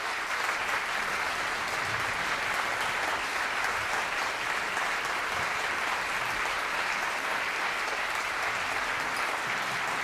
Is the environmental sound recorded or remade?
recorded